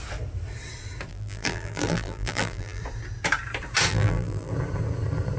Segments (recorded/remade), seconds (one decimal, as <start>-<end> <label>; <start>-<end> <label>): 0.0-1.1 recorded; 1.1-2.8 remade; 2.8-3.9 recorded; 3.9-4.5 remade; 4.5-5.4 recorded